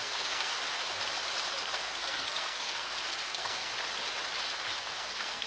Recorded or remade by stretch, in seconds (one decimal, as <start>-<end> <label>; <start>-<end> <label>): 0.0-0.5 remade; 0.5-1.6 recorded; 1.6-3.7 remade; 3.7-4.7 recorded; 4.7-5.5 remade